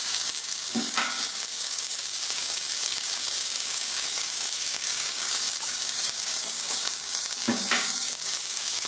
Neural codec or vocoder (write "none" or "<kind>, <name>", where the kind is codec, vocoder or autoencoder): codec, DAC